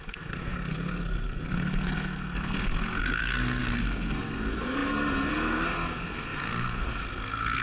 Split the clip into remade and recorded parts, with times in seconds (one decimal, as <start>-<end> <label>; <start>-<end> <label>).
0.0-7.6 remade